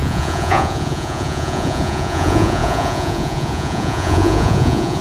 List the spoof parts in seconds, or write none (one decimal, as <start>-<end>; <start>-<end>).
0.0-5.0